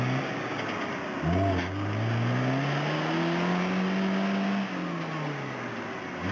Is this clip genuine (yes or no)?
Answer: yes